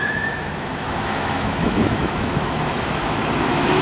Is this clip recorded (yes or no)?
no